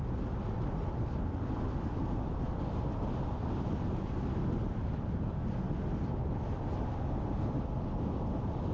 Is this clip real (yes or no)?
yes